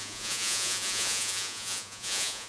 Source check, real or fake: fake